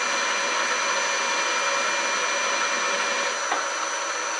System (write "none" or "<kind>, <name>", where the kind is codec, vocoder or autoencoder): none